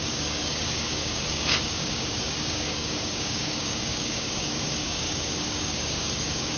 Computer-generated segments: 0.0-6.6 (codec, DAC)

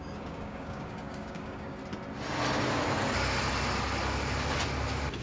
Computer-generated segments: 0.0-1.8 (codec, DAC)